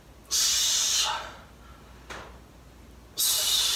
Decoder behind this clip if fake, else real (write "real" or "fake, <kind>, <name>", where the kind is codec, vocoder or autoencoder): real